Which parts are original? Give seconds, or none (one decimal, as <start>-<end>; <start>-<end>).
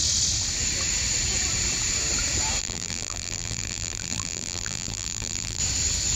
0.0-2.6; 5.6-6.2